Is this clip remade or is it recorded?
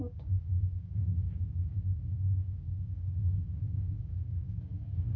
remade